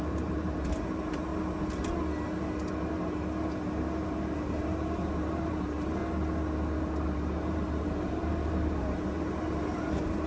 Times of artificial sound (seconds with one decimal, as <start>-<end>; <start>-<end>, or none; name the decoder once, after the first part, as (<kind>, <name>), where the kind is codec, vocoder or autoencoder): 0.0-1.3 (vocoder, BigVGAN v2); 4.1-6.0; 6.8-10.3